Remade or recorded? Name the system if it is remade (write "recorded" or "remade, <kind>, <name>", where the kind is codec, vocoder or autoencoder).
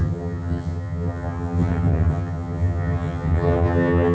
remade, vocoder, HiFi-GAN